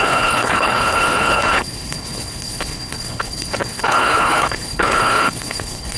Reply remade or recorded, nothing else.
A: remade